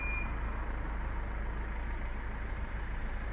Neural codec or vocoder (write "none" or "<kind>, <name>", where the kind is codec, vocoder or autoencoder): none